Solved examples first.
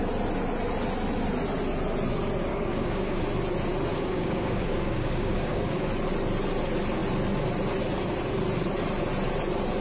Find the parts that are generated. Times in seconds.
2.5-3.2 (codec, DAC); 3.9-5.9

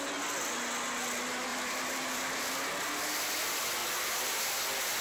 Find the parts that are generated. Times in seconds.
1.5-2.5 (vocoder, BigVGAN v2); 3.8-4.3

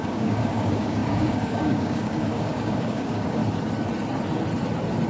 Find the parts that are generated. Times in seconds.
0.0-3.4 (codec, DAC)

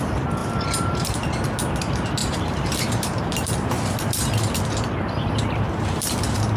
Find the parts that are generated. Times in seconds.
0.4-1.0 (vocoder, BigVGAN v2); 2.2-6.6

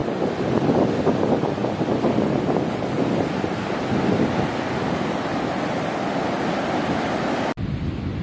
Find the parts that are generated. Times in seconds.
none